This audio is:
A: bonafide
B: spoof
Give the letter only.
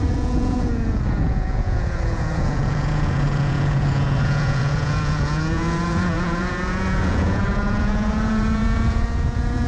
B